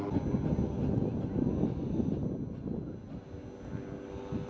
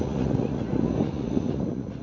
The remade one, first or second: second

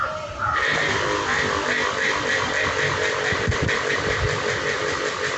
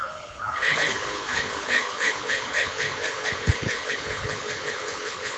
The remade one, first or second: second